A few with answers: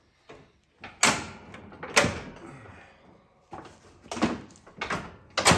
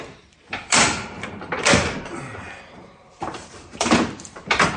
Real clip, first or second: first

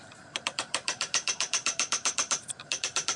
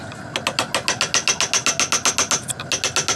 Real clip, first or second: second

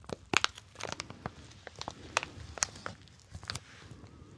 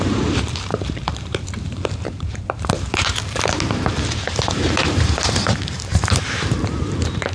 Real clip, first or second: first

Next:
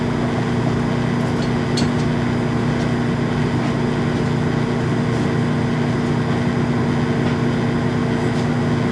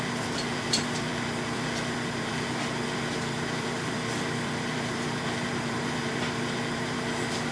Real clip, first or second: first